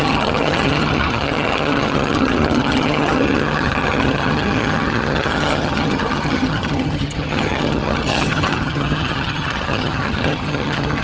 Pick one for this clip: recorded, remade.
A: remade